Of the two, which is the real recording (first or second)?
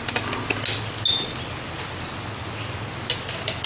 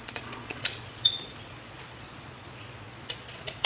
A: first